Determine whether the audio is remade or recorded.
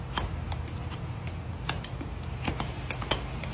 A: recorded